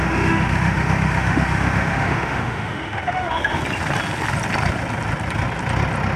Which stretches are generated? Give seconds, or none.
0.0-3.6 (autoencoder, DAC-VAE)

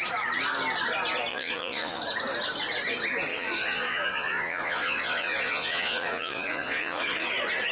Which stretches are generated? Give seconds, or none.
1.3-2.0 (vocoder, Vocos); 3.3-7.3